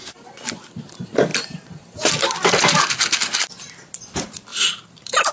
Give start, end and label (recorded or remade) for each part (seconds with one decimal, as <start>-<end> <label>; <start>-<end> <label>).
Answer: 0.0-1.3 recorded; 1.3-2.1 remade; 2.1-4.5 recorded; 4.5-5.3 remade